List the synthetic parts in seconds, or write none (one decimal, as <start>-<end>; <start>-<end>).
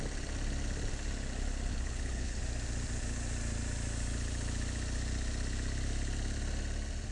1.7-2.4